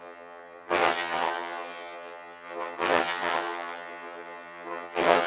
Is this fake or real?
fake